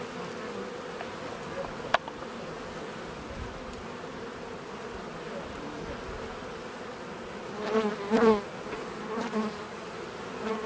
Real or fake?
real